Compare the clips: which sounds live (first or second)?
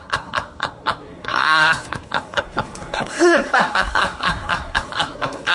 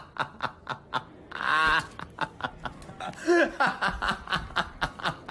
second